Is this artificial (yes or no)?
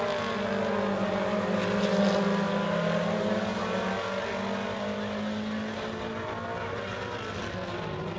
no